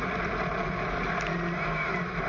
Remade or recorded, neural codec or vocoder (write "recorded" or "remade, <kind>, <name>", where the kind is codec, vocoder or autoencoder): recorded